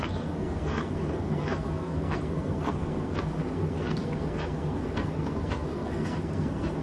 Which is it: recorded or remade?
remade